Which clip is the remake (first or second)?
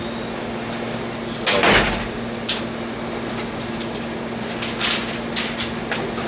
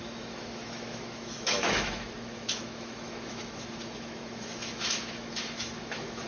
second